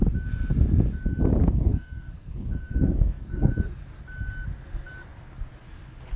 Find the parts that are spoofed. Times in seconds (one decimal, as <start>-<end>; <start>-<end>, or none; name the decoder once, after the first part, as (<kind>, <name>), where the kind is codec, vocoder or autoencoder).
1.4-3.5 (codec, SNAC)